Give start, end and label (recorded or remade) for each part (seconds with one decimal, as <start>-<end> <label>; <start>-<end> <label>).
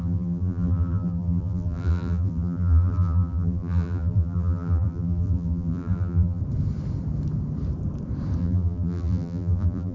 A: 0.0-6.4 remade; 6.4-8.4 recorded; 8.4-9.9 remade